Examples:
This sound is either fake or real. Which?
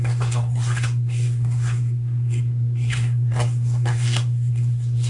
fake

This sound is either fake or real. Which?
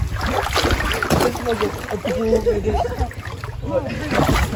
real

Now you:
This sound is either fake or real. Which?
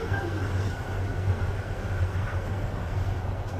fake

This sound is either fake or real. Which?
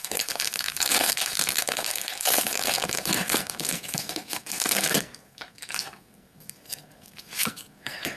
fake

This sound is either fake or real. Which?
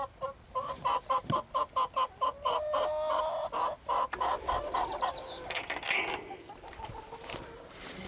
real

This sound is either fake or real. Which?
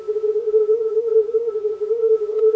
fake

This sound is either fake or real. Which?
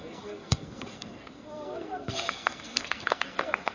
fake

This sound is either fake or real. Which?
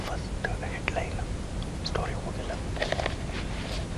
real